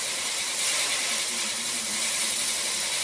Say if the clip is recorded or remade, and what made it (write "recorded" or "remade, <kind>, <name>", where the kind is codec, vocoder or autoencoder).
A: remade, vocoder, BigVGAN v2